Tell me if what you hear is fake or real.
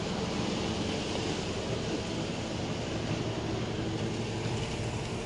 real